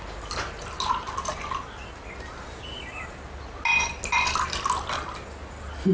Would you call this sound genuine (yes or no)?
yes